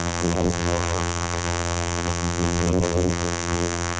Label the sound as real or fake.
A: fake